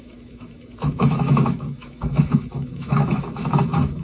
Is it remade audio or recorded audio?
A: remade